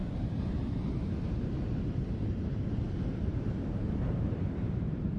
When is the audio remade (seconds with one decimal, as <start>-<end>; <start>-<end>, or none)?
3.1-5.2